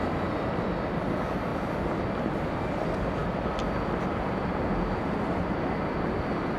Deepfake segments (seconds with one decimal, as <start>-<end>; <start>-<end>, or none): none